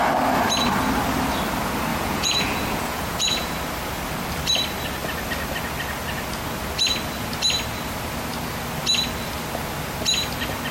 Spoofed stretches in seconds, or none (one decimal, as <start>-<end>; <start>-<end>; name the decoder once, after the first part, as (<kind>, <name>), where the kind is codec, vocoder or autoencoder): 1.9-3.5 (vocoder, Vocos)